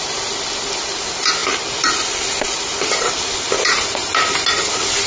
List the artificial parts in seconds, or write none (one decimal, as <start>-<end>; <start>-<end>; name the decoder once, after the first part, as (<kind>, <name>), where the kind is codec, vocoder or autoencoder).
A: none